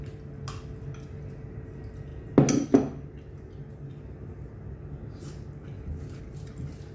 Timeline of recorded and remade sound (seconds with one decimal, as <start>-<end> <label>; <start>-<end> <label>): 0.0-6.9 recorded